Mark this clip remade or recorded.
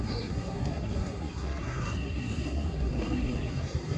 remade